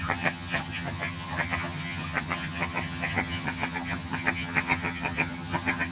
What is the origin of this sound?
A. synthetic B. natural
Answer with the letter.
A